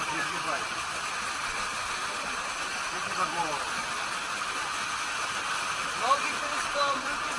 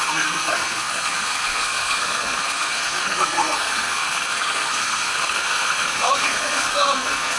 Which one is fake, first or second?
second